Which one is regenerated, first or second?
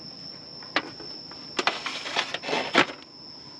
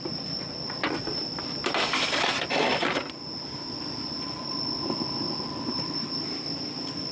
second